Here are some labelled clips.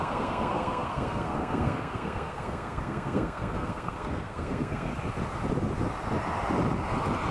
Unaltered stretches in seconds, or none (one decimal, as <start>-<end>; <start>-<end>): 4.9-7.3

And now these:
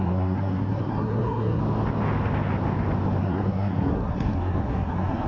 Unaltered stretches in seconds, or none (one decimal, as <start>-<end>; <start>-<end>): 1.6-3.2

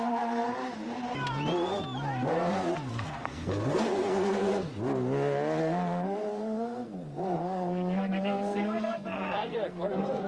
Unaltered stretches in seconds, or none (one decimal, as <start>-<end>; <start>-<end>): 0.6-2.9; 4.7-5.6

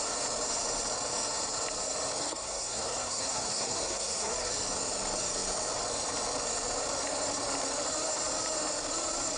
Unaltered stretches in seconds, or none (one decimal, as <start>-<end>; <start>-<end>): 0.0-2.2; 4.5-9.4